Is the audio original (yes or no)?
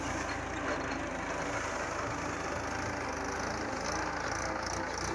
yes